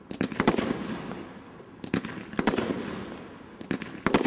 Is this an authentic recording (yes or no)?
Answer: yes